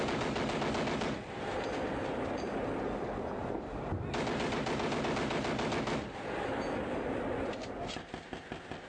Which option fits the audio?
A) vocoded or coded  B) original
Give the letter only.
B